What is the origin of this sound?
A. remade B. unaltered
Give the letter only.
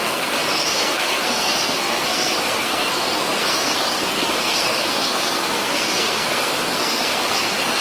A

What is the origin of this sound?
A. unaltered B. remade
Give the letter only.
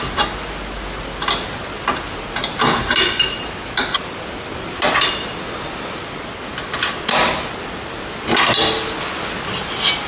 A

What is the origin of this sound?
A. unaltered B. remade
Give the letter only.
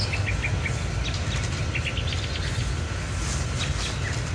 A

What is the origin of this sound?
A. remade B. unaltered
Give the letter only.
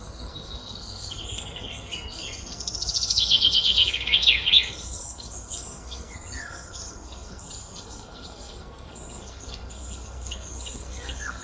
A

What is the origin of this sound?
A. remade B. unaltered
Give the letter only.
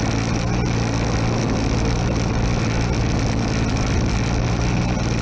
B